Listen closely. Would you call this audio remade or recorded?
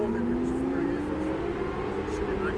recorded